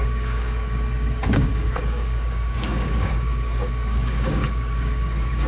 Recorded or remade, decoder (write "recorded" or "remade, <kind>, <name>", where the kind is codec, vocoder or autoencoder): remade, codec, DAC